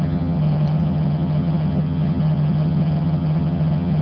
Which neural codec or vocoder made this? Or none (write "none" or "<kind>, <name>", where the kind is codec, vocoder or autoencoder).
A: vocoder, HiFi-GAN